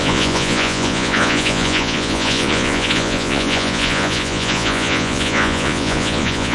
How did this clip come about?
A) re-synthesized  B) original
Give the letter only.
A